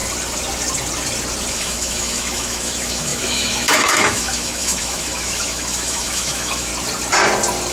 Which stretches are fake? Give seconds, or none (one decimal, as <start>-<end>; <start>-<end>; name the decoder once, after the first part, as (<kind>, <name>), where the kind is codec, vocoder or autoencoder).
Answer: 1.5-6.7 (autoencoder, DAC-VAE)